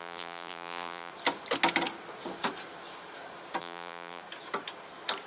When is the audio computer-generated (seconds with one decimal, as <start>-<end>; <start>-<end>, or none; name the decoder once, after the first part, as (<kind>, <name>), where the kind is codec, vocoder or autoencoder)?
0.0-1.1 (vocoder, BigVGAN v2); 3.6-4.2